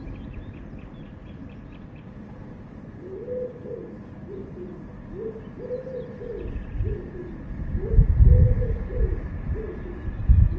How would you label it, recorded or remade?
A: recorded